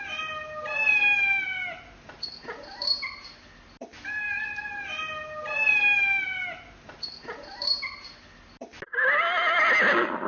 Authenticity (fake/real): real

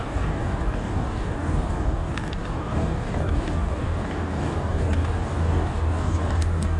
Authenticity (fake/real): fake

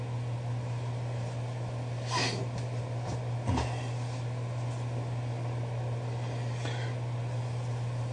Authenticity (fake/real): real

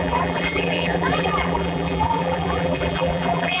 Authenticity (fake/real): fake